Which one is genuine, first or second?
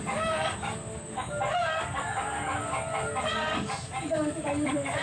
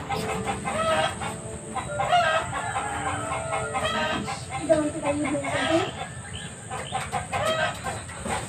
second